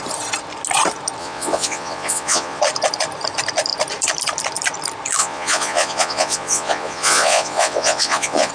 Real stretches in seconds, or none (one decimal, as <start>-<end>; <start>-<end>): 0.0-1.2; 2.6-5.2